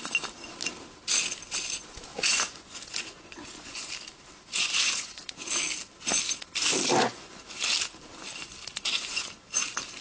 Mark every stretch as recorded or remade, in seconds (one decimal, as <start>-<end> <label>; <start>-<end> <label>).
0.0-2.1 recorded; 2.1-3.9 remade; 3.9-4.5 recorded; 4.5-5.2 remade; 5.2-7.0 recorded; 7.0-7.7 remade; 7.7-8.7 recorded; 8.7-9.6 remade; 9.6-10.0 recorded